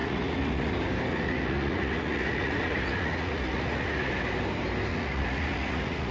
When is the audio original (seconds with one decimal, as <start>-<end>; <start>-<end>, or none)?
0.7-1.1; 4.1-4.9